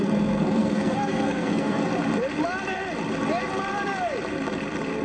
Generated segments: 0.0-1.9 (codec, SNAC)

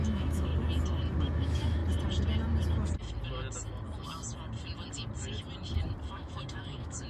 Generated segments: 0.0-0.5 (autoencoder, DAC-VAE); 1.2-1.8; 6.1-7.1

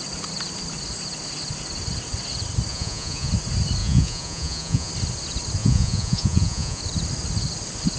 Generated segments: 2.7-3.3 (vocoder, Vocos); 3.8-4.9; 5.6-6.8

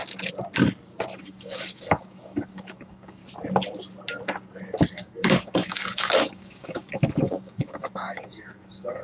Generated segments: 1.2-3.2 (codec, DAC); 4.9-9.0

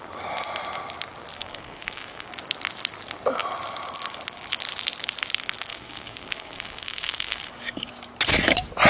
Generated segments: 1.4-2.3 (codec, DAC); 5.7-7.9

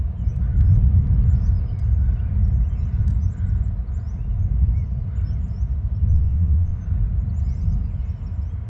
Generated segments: 6.1-6.8 (vocoder, WaveNeXt)